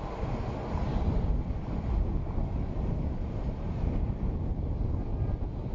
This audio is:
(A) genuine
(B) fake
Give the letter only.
A